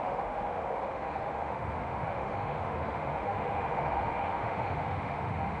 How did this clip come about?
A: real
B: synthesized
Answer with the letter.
B